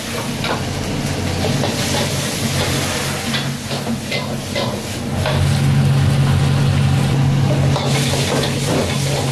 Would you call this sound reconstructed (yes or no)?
no